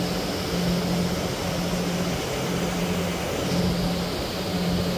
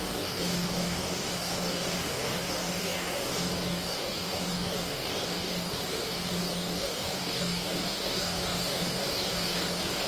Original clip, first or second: first